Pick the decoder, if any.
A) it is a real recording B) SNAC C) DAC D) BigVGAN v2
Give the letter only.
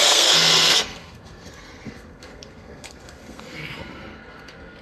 B